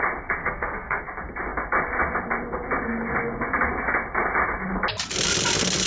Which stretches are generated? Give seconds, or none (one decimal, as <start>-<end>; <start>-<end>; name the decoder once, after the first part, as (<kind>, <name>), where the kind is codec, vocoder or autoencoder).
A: 0.4-1.0 (codec, SNAC)